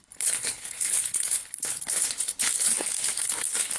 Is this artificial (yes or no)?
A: yes